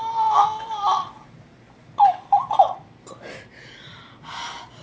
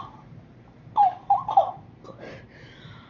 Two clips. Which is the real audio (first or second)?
first